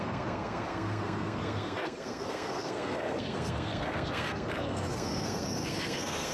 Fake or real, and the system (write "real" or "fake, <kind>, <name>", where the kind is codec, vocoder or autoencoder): fake, codec, SNAC